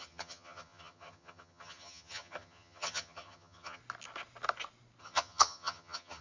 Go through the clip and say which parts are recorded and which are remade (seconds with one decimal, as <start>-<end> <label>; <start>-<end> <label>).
0.0-3.8 remade; 3.8-5.0 recorded; 5.0-6.2 remade